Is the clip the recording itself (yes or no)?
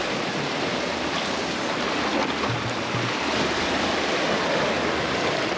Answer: yes